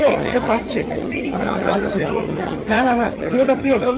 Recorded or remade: remade